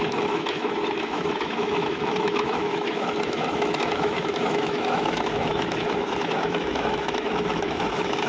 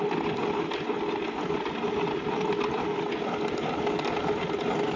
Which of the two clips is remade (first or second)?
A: first